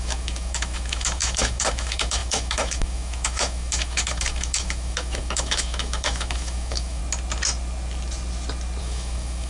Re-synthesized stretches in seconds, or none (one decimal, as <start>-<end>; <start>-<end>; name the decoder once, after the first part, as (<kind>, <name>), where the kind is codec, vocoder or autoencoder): 0.0-7.0 (autoencoder, DAC-VAE); 8.8-9.5